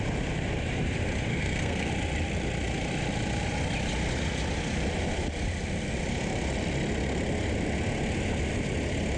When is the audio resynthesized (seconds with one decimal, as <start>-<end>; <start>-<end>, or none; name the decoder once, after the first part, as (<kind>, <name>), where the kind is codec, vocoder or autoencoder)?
1.3-1.9 (codec, SNAC)